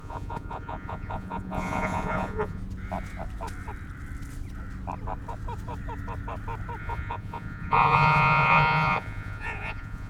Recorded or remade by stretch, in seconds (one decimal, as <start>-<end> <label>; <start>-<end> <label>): 0.0-2.6 remade; 2.6-6.8 recorded; 6.8-10.1 remade